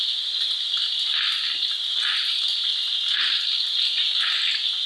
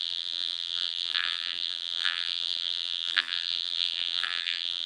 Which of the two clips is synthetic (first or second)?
second